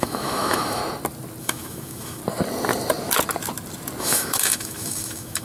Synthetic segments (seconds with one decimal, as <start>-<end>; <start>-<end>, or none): 0.0-0.8; 1.4-2.2; 4.0-5.4